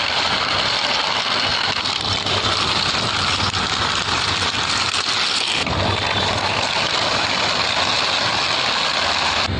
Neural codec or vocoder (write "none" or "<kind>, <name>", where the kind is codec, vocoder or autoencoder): none